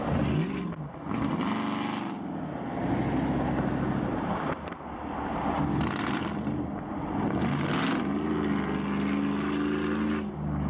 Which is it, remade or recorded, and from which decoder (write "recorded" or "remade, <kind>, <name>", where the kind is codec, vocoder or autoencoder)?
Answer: recorded